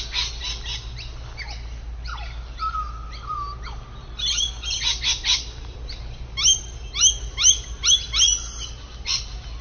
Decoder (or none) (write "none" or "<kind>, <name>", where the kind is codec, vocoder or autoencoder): none